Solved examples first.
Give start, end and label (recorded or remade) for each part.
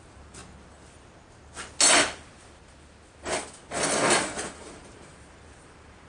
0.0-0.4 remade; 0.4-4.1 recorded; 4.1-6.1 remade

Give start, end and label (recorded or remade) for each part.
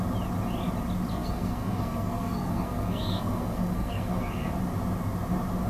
0.0-1.1 recorded; 1.1-4.5 remade; 4.5-5.7 recorded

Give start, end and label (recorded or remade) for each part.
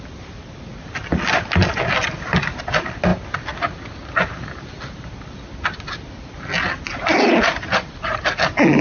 0.0-8.8 recorded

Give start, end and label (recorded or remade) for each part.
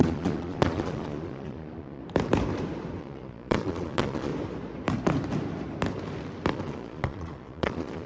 0.0-2.0 remade; 2.0-3.0 recorded; 3.0-4.3 remade; 4.3-6.5 recorded; 6.5-8.1 remade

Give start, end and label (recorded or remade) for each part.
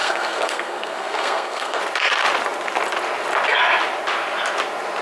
0.0-1.8 remade; 1.8-5.0 recorded